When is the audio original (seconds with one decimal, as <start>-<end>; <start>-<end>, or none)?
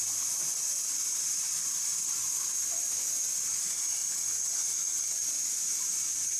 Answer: 0.0-1.1; 1.9-3.6; 4.0-5.6